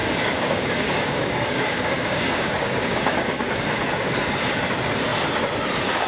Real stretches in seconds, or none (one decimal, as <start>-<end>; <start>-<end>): 3.6-6.1